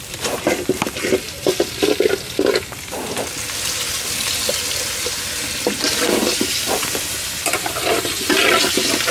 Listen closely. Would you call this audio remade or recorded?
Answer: recorded